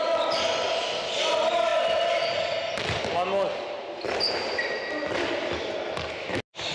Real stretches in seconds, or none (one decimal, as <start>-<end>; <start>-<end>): 0.0-6.7